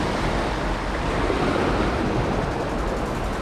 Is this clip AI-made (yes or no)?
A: no